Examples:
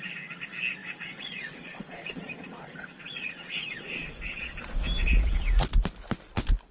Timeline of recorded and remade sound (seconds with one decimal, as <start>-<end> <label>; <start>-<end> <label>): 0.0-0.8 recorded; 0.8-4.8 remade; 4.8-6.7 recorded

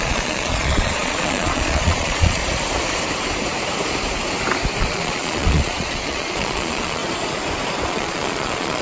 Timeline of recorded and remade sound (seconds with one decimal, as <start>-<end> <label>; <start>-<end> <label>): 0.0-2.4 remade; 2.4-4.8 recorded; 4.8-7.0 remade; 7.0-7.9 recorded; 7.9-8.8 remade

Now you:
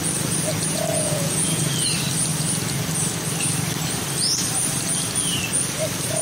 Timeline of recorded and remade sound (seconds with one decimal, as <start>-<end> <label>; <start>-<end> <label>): 0.0-0.9 recorded; 0.9-1.6 remade; 1.6-6.2 recorded

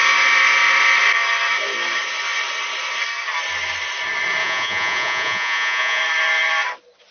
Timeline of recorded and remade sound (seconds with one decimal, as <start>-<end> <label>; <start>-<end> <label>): 0.0-4.4 recorded; 4.4-6.0 remade; 6.0-7.1 recorded

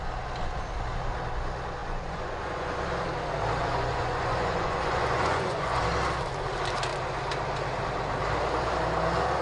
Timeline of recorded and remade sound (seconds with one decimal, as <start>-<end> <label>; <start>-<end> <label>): 0.0-1.8 recorded; 1.8-2.8 remade; 2.8-3.6 recorded; 3.6-5.8 remade; 5.8-9.4 recorded

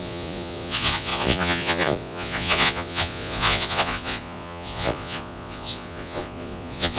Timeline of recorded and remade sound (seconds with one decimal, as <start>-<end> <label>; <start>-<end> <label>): 0.0-7.0 remade